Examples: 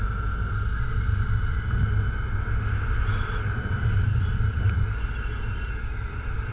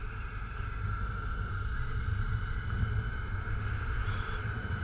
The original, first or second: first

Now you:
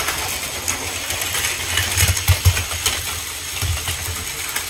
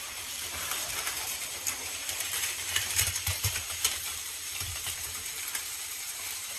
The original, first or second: first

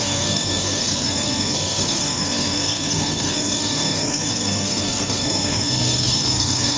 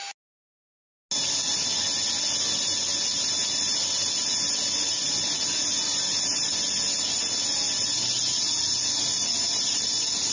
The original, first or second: second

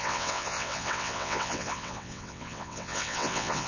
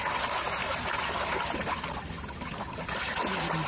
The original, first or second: second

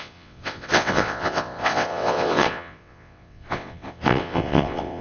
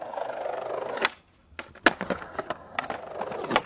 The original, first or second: second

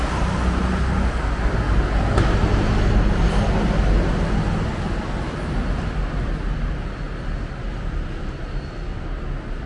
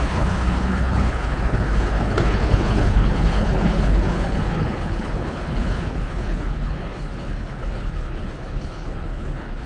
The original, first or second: first